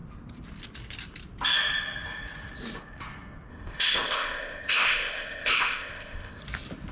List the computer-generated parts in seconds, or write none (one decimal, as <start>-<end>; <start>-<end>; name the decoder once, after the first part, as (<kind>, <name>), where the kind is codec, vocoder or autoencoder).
3.5-6.4 (codec, ZipCodec)